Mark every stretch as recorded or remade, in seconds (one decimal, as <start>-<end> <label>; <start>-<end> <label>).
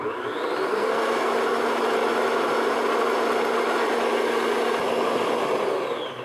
0.0-0.7 recorded; 0.7-1.3 remade; 1.3-6.2 recorded